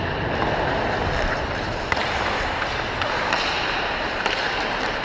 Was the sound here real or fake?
real